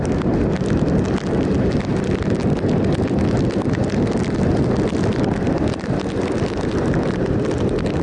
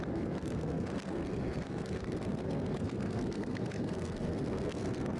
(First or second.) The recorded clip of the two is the first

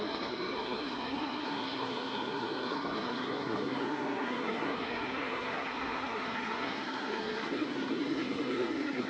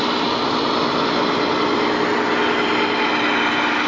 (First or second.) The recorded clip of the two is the second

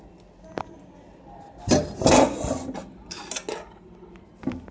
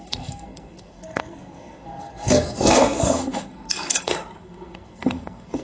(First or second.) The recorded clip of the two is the first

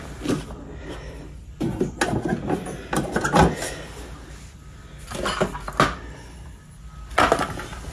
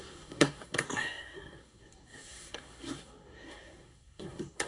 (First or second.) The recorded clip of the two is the first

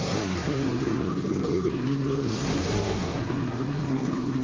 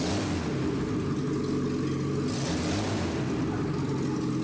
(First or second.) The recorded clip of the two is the second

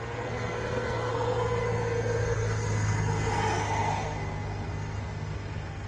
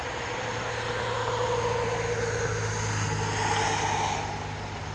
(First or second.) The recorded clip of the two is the second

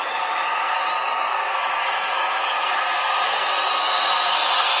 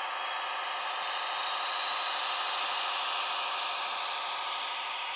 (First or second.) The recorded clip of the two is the second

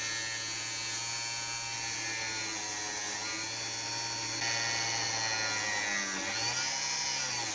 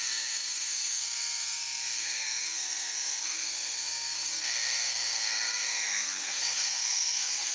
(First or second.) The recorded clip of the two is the first